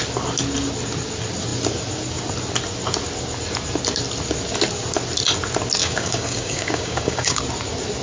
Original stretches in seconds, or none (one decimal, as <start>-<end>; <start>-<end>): 0.0-5.8; 7.4-8.0